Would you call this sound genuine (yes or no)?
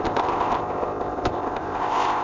no